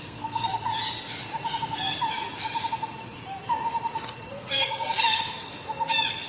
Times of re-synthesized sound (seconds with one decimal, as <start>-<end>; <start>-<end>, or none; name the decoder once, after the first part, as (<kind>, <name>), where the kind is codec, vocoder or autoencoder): 0.0-0.5 (codec, SNAC); 4.3-5.5